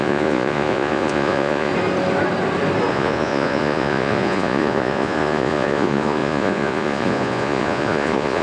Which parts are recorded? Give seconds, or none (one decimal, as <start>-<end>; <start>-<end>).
1.7-2.9